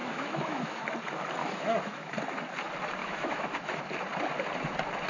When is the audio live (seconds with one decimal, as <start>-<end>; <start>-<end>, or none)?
0.8-1.4; 2.1-3.0; 3.8-5.1